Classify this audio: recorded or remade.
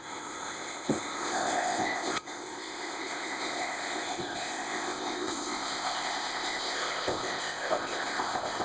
remade